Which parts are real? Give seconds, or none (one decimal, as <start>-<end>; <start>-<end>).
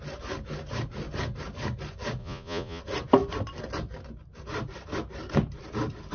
0.0-2.2; 2.8-6.1